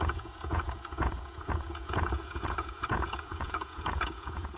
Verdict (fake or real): fake